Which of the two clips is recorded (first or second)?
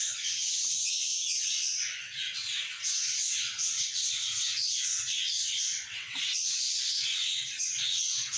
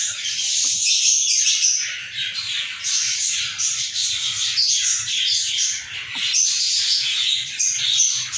second